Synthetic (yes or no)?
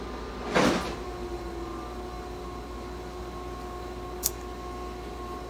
no